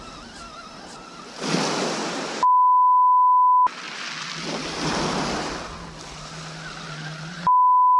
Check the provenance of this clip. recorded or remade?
recorded